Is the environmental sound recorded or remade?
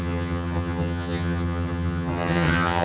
remade